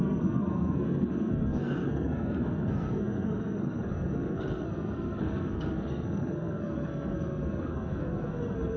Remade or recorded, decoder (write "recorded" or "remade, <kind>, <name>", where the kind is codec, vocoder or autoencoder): remade, codec, SNAC